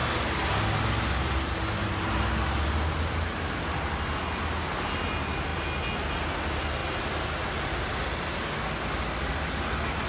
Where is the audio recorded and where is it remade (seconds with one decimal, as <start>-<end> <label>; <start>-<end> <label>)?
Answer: 0.0-10.1 recorded